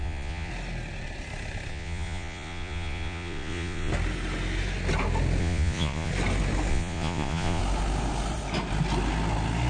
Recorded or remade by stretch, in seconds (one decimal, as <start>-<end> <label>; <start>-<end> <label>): 0.0-0.5 remade; 0.5-1.7 recorded; 1.7-3.9 remade; 3.9-5.4 recorded; 5.4-6.1 remade; 6.1-6.7 recorded; 6.7-7.6 remade; 7.6-9.7 recorded